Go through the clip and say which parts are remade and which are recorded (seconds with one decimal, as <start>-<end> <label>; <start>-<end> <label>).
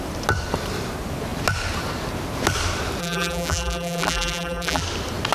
0.0-3.0 recorded; 3.0-4.8 remade; 4.8-5.3 recorded